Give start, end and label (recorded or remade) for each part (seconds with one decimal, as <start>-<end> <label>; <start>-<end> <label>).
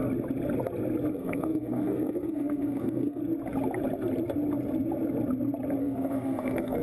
0.0-1.1 recorded; 1.1-3.2 remade; 3.2-5.8 recorded; 5.8-6.8 remade